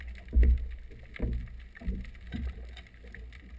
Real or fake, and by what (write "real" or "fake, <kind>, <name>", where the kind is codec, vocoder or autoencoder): real